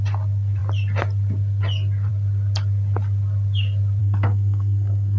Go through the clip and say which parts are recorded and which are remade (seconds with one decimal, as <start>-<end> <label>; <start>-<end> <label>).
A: 0.0-4.0 recorded; 4.0-5.2 remade